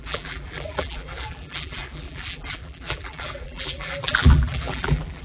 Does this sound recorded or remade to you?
remade